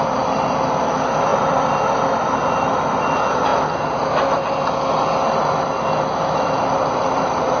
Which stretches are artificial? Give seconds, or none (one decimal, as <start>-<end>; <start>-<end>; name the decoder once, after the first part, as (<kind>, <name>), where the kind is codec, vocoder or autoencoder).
0.0-3.5 (vocoder, BigVGAN v2); 6.3-7.6